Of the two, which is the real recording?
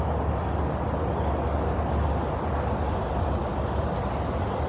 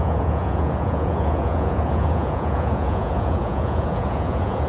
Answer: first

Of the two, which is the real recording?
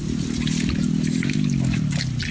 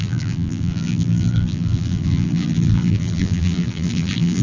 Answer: first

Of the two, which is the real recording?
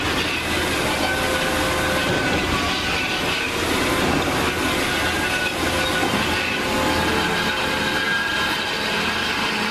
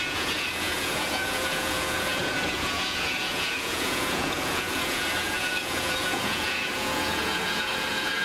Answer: first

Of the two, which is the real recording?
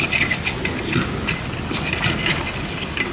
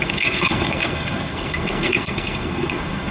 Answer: first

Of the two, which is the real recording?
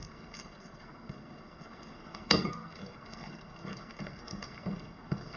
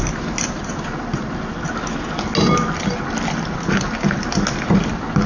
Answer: second